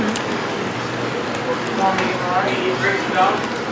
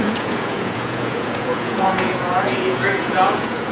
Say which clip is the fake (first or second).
second